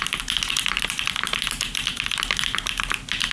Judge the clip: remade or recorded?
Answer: recorded